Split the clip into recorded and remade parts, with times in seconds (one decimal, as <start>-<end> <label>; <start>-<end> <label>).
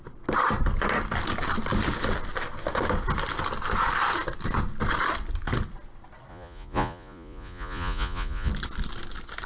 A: 0.0-6.3 recorded; 6.3-8.5 remade; 8.5-9.5 recorded